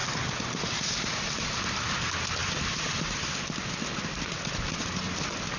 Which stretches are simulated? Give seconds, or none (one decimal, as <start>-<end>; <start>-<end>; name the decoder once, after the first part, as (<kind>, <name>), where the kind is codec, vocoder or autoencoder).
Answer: none